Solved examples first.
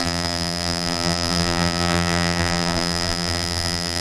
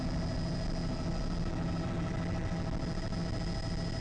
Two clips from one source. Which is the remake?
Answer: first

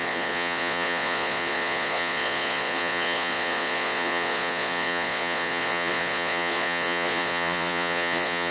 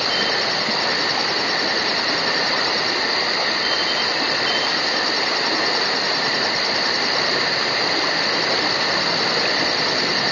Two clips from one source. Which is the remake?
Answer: first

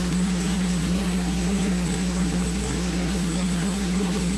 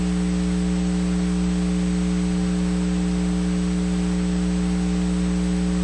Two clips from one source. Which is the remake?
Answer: first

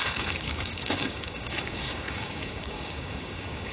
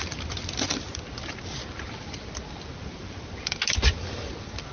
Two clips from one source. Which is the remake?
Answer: first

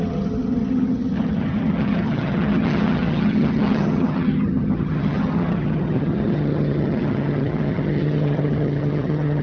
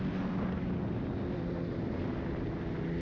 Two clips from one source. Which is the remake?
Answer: first